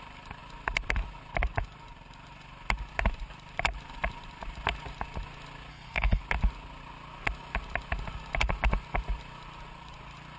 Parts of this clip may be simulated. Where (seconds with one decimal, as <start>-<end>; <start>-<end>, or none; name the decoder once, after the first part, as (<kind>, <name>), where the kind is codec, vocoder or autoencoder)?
5.7-6.2 (codec, SNAC)